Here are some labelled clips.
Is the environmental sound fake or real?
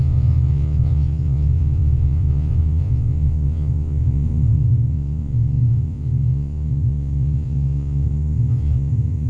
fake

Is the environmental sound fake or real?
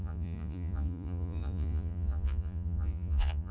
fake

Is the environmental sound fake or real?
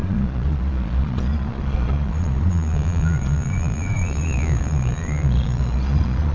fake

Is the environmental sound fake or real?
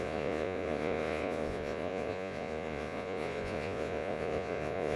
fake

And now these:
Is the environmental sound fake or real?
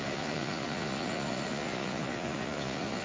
fake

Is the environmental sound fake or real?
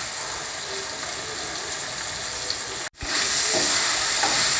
real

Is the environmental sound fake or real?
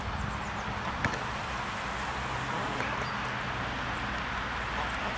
real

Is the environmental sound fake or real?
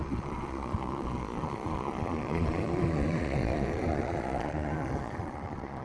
fake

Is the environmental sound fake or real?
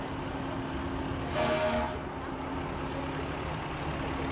real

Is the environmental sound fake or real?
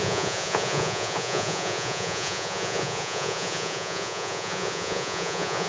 fake